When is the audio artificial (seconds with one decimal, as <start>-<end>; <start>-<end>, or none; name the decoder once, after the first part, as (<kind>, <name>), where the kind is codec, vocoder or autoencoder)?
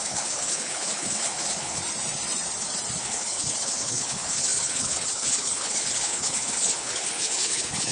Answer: 0.0-1.8 (codec, HILCodec); 3.0-7.9